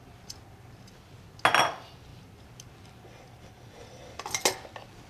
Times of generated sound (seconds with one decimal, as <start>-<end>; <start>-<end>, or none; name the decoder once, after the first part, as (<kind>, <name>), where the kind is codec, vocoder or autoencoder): none